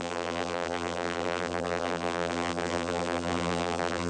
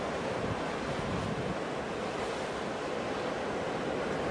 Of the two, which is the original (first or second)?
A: second